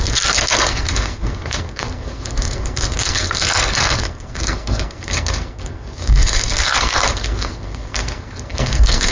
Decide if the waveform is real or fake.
fake